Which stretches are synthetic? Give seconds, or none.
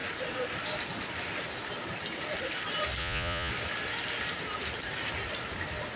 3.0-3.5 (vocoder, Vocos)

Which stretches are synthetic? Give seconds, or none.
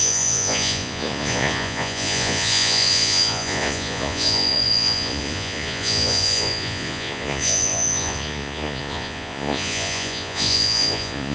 0.0-11.3 (vocoder, Vocos)